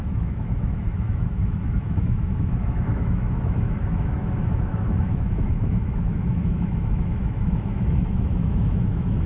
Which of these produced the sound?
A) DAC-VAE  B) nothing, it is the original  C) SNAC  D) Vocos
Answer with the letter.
A